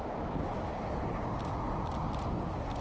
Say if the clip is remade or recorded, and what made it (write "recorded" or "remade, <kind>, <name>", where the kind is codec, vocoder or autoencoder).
recorded